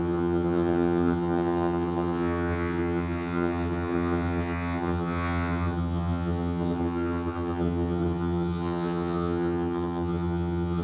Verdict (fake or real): fake